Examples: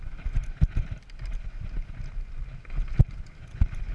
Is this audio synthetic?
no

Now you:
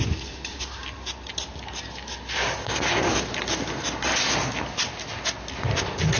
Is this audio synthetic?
no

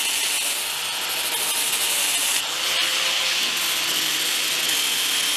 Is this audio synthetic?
no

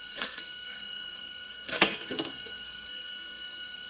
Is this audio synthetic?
yes